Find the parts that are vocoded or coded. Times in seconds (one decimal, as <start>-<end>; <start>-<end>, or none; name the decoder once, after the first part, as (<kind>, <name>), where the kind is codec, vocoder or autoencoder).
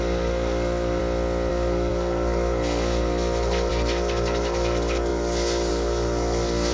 0.0-1.0 (codec, SNAC); 1.5-6.7